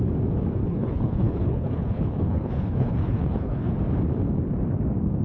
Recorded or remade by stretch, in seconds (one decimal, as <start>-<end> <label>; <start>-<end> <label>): 0.0-0.6 recorded; 0.6-3.7 remade; 3.7-5.2 recorded